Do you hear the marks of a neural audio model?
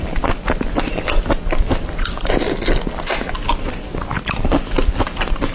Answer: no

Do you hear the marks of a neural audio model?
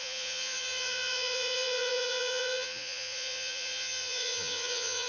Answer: yes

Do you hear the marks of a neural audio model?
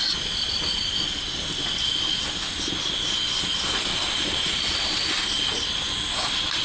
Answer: no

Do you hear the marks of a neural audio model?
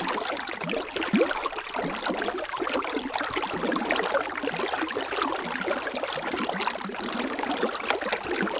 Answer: no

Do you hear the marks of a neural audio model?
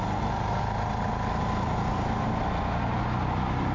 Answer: no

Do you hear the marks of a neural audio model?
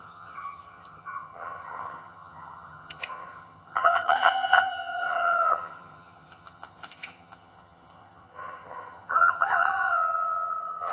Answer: yes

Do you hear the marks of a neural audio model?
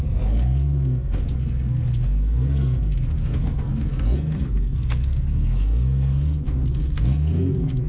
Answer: yes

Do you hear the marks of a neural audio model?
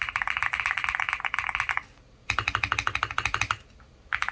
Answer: no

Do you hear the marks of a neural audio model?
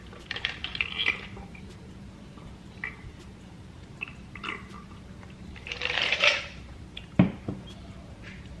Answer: yes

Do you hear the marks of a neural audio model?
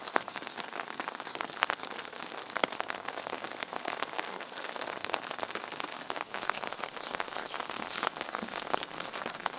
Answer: yes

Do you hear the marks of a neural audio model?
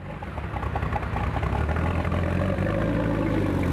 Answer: no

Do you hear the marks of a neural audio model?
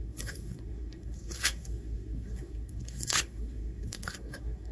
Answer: yes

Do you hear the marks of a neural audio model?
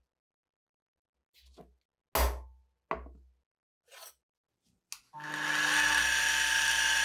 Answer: no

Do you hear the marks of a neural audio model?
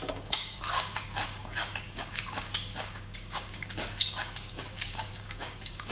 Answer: yes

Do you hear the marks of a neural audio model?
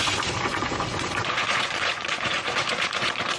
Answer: yes